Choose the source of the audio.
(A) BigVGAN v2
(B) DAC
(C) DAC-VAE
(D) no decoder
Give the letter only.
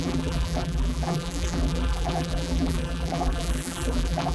A